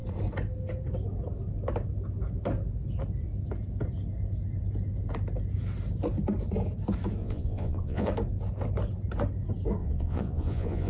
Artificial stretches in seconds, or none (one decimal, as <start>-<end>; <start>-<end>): 7.2-8.1; 9.8-10.9